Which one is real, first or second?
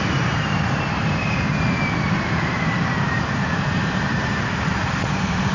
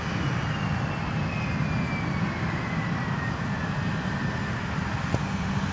second